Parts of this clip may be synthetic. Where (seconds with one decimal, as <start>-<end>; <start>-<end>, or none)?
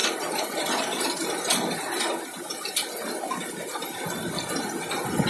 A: 0.0-3.2; 3.7-5.3